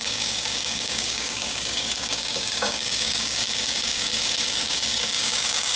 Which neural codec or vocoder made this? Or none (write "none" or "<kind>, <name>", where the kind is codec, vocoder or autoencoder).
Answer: codec, DAC